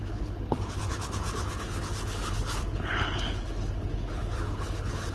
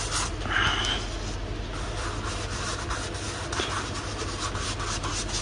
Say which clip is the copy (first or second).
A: first